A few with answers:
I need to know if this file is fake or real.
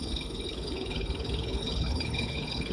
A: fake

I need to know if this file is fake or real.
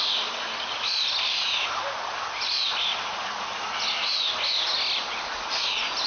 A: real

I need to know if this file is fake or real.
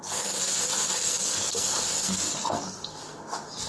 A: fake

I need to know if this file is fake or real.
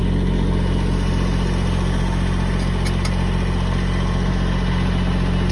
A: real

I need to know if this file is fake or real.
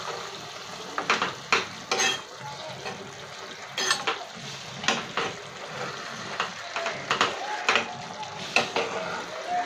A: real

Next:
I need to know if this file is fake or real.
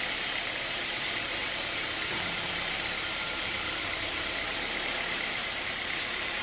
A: fake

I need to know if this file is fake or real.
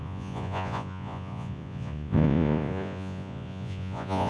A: fake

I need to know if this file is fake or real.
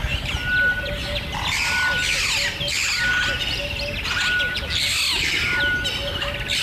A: real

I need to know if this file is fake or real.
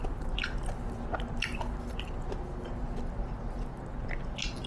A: real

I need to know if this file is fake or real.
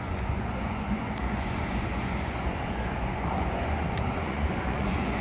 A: fake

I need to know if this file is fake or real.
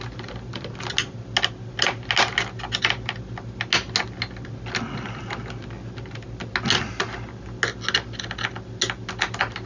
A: real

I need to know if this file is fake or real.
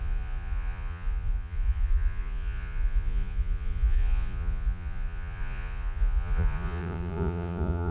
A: fake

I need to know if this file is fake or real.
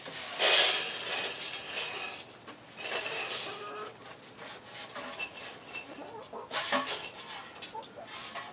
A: real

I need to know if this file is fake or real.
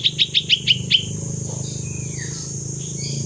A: real